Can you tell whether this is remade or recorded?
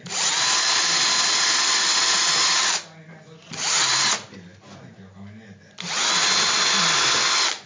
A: recorded